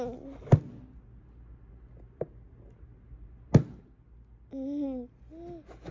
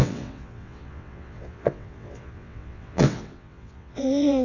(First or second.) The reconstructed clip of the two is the second